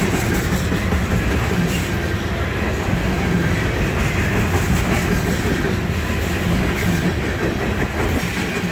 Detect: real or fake real